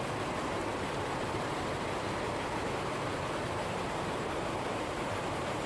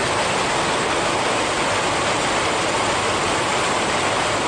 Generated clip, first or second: first